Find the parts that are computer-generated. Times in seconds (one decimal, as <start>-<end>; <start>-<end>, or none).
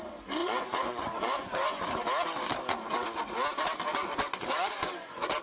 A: 0.4-1.9; 3.9-5.4